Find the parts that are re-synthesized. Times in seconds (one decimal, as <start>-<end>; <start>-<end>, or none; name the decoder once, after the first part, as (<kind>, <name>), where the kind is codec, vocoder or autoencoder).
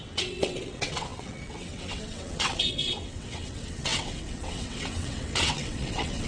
0.0-6.3 (vocoder, WaveNeXt)